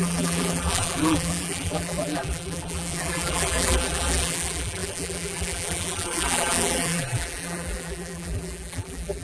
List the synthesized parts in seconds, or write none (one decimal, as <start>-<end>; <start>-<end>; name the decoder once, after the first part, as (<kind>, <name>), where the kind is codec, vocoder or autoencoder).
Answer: 0.0-9.2 (vocoder, BigVGAN v2)